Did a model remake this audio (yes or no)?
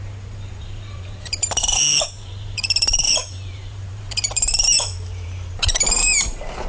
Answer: yes